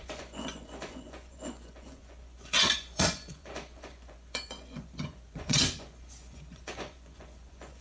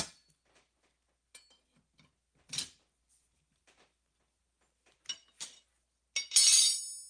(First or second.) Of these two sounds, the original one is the second